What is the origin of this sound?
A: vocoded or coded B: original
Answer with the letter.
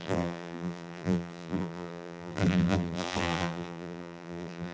A